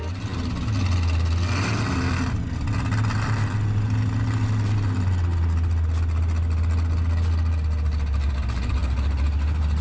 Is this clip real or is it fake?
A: real